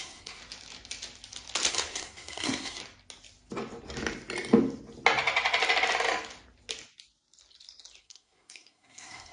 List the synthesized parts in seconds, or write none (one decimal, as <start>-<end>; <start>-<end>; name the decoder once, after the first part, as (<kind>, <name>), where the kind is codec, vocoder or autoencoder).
0.0-0.4 (codec, SNAC); 1.7-2.8; 8.0-9.3